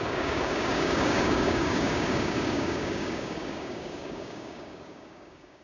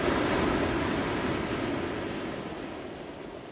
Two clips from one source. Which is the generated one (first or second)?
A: first